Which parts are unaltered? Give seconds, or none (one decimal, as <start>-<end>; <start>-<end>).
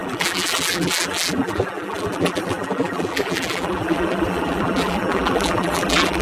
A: none